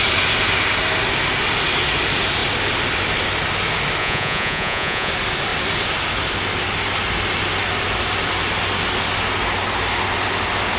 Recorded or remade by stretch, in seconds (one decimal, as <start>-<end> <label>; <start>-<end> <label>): 0.0-4.0 recorded; 4.0-5.1 remade; 5.1-10.8 recorded